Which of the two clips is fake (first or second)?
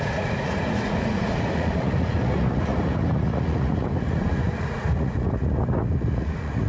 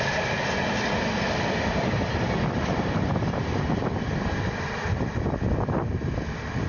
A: first